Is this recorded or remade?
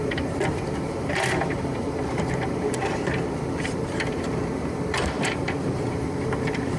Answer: remade